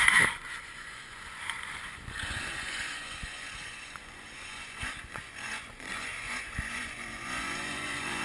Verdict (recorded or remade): remade